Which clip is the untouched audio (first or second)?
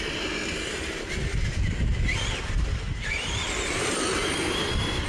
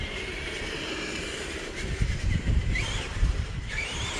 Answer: first